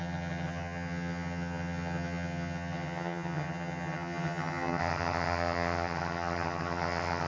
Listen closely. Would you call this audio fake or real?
fake